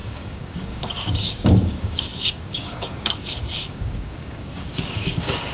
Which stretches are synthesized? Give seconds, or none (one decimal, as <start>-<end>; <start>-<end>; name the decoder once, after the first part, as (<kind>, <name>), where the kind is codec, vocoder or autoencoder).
0.0-5.5 (codec, DAC)